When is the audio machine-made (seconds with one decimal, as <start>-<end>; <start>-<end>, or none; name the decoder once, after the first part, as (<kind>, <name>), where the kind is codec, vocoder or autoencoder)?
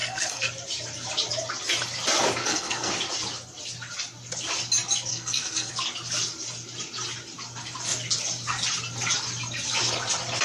0.0-0.5 (codec, SNAC); 2.4-2.9; 5.1-5.7